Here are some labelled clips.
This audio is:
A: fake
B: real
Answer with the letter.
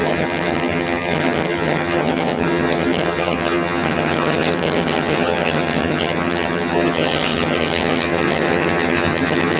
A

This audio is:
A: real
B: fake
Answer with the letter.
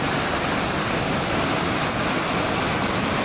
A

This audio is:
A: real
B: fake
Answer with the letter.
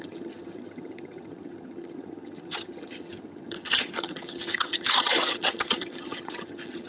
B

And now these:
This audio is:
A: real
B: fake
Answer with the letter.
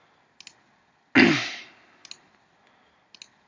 A